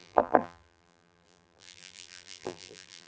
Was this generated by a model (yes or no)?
yes